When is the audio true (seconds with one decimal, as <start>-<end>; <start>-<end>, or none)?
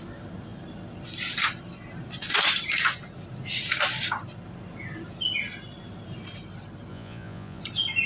0.0-6.9; 7.6-8.1